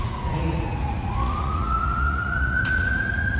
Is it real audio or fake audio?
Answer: fake